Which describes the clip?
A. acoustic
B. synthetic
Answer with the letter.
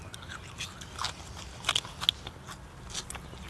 A